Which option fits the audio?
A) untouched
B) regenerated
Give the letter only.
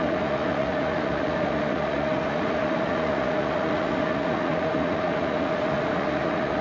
B